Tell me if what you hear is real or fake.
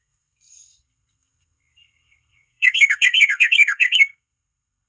fake